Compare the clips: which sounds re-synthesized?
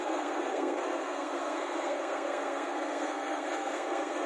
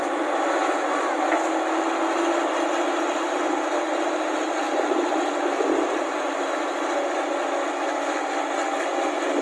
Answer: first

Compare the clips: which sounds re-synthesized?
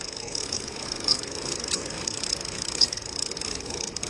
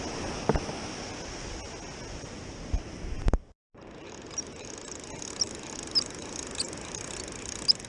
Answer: first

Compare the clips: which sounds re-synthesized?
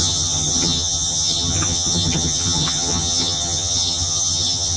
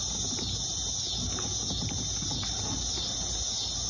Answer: first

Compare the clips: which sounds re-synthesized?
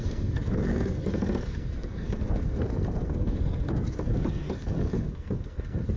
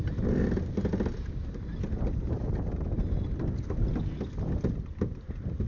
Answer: first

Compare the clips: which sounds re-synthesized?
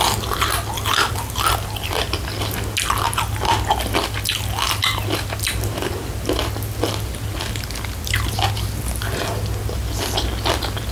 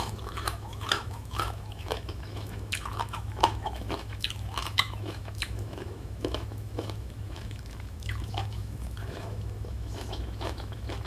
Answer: second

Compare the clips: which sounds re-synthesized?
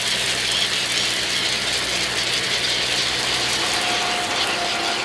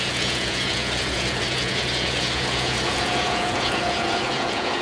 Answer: second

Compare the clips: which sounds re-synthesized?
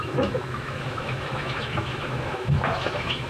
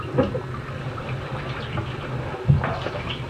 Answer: first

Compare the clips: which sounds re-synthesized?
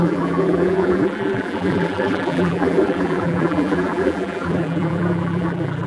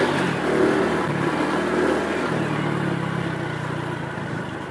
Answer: first